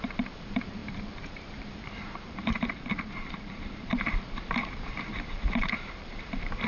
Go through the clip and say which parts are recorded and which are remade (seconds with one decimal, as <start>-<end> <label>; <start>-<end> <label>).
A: 0.0-6.7 remade